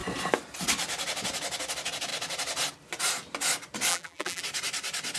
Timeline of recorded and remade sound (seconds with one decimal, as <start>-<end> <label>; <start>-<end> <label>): 0.0-3.9 recorded; 3.9-4.4 remade; 4.4-5.2 recorded